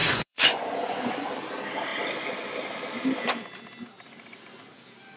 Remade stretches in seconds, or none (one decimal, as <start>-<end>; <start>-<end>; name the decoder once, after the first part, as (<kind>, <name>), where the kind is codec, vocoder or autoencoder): 0.0-1.1 (vocoder, Vocos)